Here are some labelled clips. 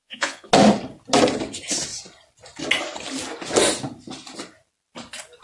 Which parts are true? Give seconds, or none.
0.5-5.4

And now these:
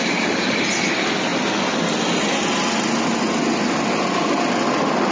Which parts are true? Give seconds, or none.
0.0-5.1

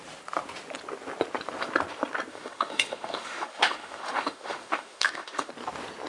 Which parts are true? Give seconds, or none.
0.0-2.3; 5.5-6.1

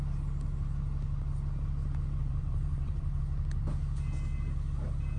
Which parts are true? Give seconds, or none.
0.0-2.2; 3.2-5.2

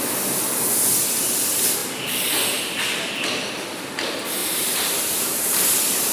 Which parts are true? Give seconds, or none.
0.0-4.4; 5.6-6.1

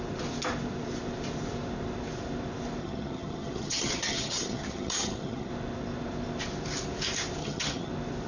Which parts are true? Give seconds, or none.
0.0-2.8; 5.5-7.4; 7.9-8.3